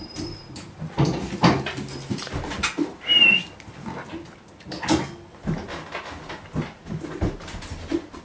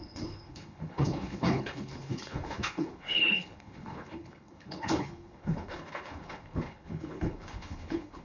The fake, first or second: second